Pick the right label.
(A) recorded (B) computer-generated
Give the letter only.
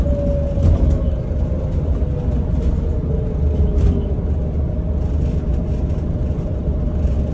A